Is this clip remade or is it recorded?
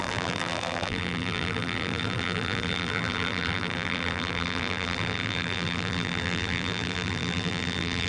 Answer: remade